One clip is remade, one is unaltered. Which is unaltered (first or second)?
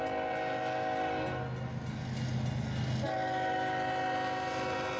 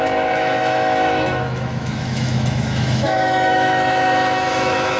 first